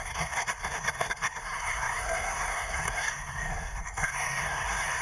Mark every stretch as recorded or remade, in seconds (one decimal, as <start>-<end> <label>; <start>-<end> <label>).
0.0-5.0 remade